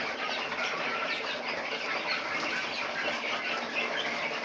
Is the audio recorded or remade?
recorded